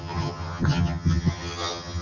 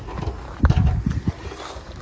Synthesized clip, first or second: first